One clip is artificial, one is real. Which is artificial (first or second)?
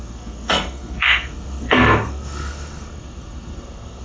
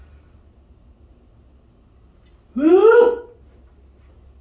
first